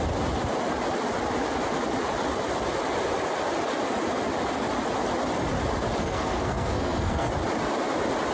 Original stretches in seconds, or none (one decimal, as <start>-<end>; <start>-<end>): 0.0-6.0; 7.3-8.3